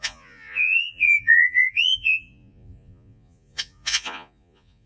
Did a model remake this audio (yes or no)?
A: yes